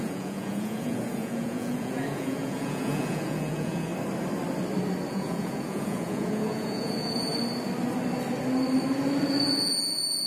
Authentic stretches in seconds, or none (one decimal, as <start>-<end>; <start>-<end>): 3.9-5.1; 7.3-9.4